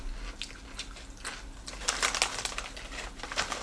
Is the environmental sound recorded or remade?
recorded